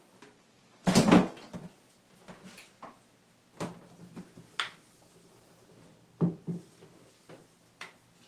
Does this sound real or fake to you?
real